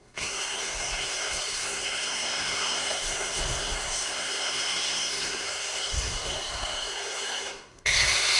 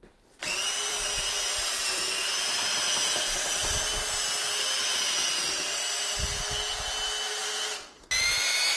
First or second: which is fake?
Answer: first